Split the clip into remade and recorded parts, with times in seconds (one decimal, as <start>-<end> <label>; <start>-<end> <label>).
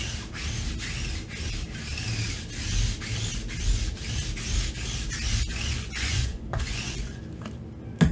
0.0-5.7 recorded; 5.7-7.2 remade; 7.2-8.1 recorded